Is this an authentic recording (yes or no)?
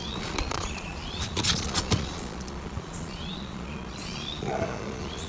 no